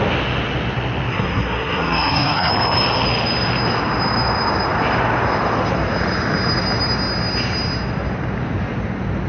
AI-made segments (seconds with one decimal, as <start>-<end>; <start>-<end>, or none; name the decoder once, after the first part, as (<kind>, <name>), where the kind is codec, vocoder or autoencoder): 1.1-2.5 (codec, SNAC)